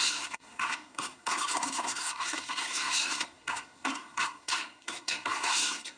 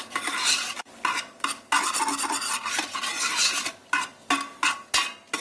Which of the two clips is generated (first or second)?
first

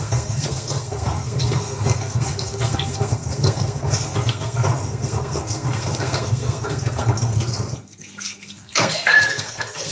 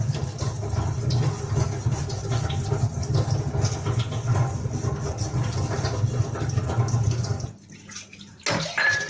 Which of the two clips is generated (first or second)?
first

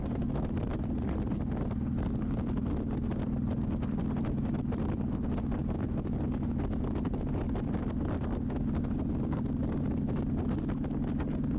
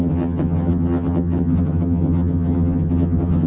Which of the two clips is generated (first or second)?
second